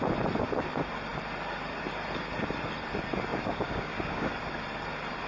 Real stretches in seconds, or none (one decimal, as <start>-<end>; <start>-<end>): 0.0-3.3; 4.3-5.3